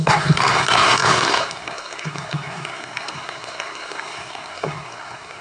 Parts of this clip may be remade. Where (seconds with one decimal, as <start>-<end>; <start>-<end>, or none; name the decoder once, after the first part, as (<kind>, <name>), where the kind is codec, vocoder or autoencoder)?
0.0-5.4 (codec, SNAC)